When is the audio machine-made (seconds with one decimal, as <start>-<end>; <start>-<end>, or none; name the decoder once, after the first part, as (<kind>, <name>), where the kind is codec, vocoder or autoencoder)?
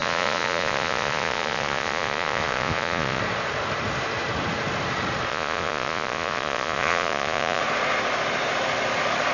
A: 0.0-3.2 (vocoder, Vocos); 5.3-7.6